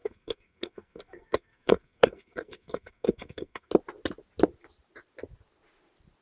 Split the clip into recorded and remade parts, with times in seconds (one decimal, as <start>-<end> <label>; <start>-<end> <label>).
0.0-3.7 remade; 3.7-6.2 recorded